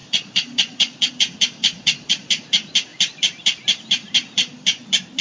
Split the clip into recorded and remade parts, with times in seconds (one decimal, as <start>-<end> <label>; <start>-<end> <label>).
0.0-1.1 remade; 1.1-1.6 recorded; 1.6-2.3 remade; 2.3-5.2 recorded